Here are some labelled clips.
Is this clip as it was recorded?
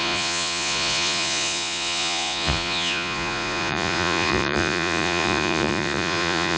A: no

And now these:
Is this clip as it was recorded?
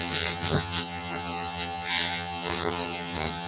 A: no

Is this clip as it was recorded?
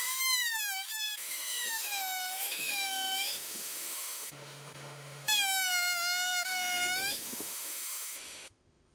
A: no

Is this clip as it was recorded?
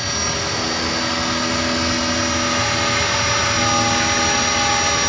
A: yes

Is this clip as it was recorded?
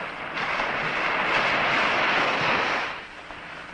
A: yes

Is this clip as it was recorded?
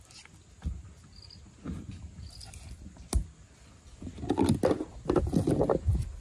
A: yes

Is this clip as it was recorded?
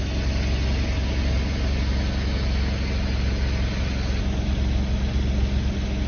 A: yes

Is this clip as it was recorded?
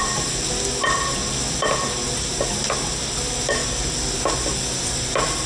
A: yes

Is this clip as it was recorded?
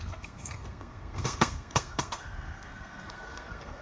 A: no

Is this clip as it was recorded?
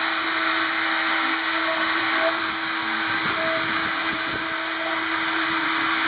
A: yes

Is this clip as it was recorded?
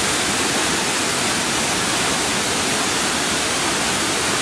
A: no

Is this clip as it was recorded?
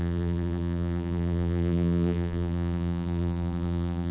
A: no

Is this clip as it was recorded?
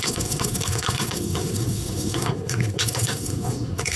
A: no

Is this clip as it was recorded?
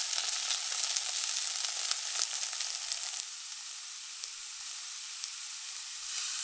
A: yes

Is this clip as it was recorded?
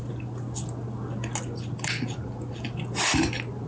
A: yes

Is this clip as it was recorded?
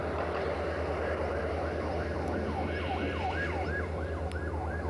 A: yes